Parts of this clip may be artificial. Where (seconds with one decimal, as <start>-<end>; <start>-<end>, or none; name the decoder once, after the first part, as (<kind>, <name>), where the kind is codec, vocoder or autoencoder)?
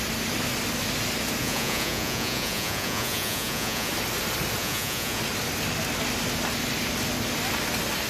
1.4-3.9 (vocoder, Vocos); 4.6-5.2